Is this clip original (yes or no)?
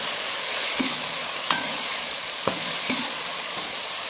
no